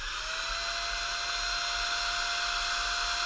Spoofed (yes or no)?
no